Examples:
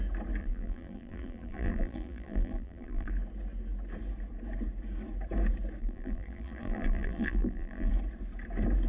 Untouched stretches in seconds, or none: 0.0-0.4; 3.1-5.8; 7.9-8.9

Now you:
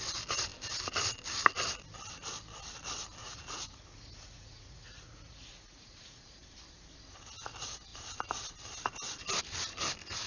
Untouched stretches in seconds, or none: 0.0-3.2; 6.4-10.3